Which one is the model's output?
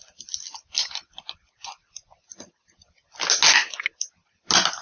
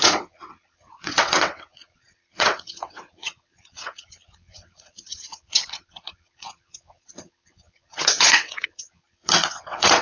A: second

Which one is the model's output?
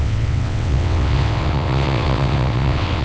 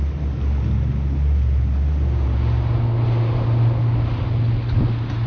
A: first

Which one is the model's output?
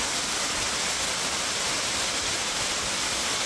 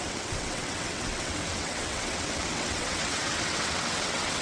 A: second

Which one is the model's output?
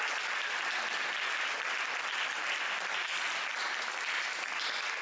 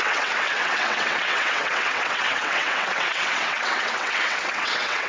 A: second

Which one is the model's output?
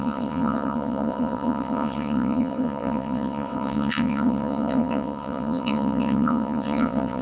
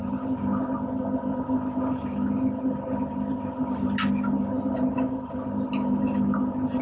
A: first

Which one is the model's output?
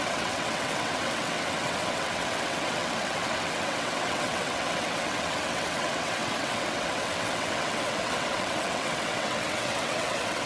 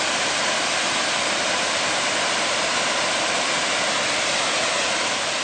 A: first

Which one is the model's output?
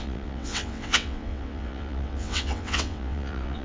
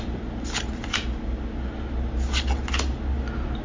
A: first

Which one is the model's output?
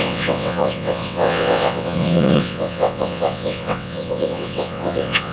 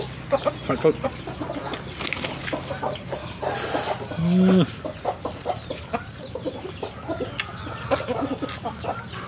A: first